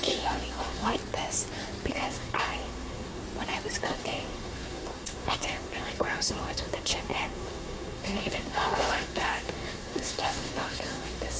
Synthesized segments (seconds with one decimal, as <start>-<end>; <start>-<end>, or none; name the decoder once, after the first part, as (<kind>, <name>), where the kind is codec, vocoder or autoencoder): 0.0-1.0 (codec, SNAC); 1.9-3.2; 3.8-11.4